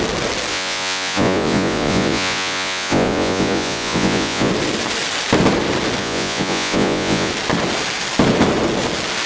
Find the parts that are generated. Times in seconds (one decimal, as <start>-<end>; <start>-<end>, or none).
0.5-4.5; 6.0-7.3